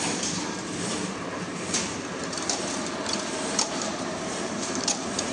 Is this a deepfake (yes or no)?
yes